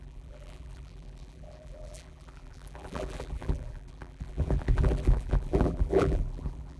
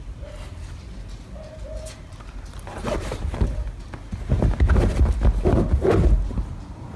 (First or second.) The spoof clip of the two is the first